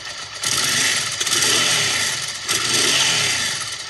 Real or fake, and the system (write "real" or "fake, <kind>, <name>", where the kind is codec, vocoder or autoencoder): real